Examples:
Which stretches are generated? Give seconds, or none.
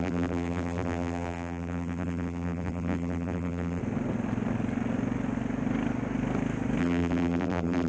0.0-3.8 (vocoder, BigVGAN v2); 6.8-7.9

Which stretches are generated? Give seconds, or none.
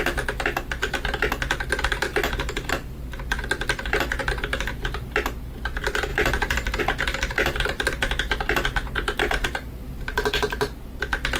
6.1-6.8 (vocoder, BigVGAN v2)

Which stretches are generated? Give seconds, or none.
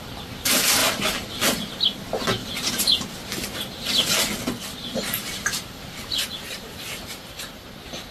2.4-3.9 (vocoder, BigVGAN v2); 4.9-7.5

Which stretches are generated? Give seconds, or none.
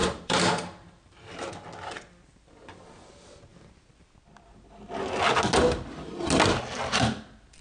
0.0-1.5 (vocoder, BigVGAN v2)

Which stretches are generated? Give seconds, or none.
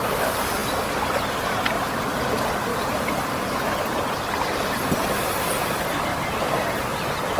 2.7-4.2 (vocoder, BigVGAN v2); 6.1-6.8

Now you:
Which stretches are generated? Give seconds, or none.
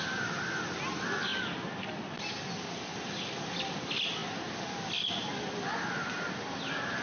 1.3-2.1 (vocoder, BigVGAN v2)